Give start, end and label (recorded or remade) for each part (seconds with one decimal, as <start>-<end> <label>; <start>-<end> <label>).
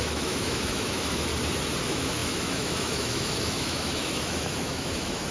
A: 0.0-1.3 remade; 1.3-1.8 recorded; 1.8-5.3 remade